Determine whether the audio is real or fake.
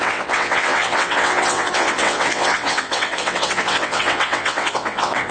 fake